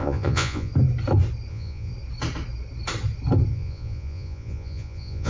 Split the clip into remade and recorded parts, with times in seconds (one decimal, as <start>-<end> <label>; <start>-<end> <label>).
0.0-0.7 remade; 0.7-1.5 recorded; 1.5-1.9 remade; 1.9-3.5 recorded; 3.5-5.3 remade